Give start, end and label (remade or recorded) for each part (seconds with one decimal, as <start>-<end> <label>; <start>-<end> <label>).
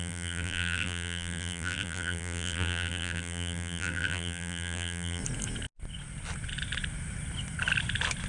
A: 0.0-5.2 remade; 5.2-8.3 recorded